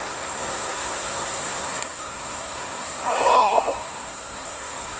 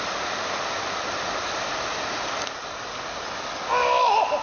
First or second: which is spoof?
first